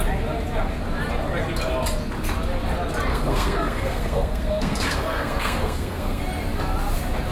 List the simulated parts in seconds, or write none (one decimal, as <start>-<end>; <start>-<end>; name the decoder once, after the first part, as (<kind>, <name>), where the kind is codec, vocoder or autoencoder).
3.1-6.2 (codec, SNAC)

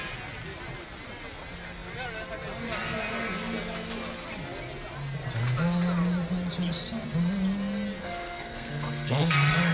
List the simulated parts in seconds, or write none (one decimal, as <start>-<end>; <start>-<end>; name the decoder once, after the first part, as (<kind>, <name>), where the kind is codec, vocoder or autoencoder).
8.0-9.7 (codec, SNAC)

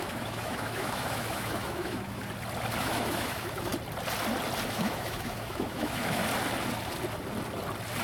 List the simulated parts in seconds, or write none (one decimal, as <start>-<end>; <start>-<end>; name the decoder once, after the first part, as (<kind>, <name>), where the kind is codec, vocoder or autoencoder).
0.0-2.2 (autoencoder, DAC-VAE); 2.8-3.7; 4.7-6.2

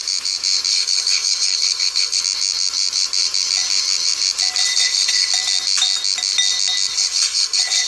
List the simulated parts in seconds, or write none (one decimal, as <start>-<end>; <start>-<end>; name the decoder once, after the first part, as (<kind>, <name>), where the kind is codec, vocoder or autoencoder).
0.7-2.2 (codec, HILCodec); 4.7-5.3; 6.9-7.9

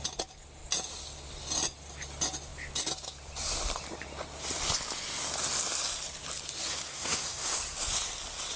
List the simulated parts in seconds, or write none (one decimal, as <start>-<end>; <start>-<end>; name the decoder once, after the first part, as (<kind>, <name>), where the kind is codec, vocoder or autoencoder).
6.9-7.6 (codec, SNAC)